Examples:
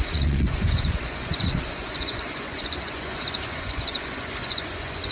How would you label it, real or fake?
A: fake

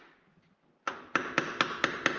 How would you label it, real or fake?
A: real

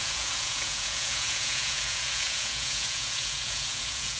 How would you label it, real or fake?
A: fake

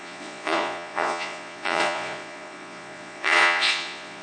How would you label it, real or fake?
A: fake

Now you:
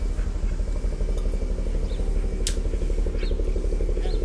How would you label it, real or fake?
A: real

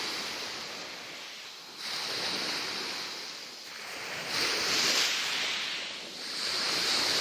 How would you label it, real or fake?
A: real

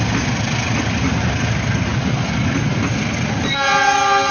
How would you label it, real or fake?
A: real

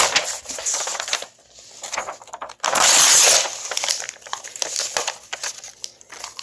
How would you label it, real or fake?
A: real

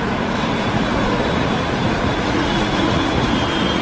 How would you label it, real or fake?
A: fake